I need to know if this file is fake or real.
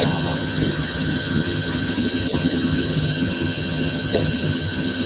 fake